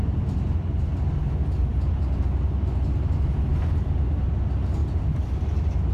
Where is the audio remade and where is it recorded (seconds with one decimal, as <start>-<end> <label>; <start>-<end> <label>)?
0.0-4.8 recorded; 4.8-5.9 remade